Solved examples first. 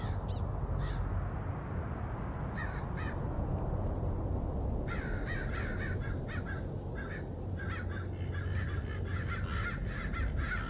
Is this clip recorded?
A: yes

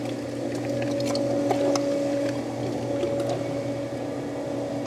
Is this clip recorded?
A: yes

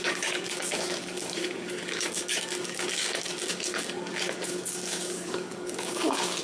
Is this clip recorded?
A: no